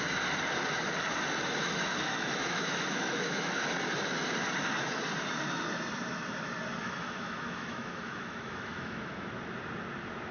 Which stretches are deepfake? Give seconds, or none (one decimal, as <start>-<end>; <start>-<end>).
1.6-3.5; 6.8-9.3